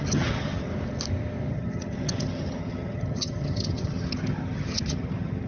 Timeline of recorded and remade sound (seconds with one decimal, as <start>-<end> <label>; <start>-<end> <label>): 0.0-0.7 remade; 0.7-1.5 recorded; 1.5-5.5 remade